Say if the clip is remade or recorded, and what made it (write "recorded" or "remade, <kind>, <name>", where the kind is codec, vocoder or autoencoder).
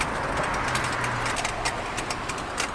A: recorded